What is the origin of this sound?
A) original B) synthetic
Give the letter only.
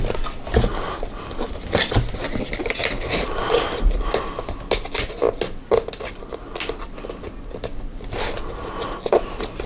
A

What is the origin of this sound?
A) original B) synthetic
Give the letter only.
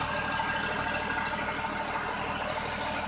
A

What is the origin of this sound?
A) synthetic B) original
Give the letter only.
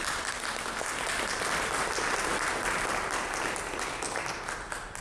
B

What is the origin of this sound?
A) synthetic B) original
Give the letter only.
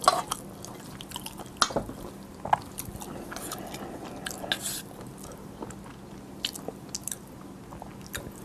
B